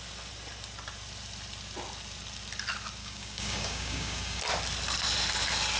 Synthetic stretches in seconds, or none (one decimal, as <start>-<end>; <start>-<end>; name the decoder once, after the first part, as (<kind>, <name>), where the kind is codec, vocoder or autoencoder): 3.0-4.4 (codec, DAC)